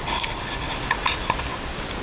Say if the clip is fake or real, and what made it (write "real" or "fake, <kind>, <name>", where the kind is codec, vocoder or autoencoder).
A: real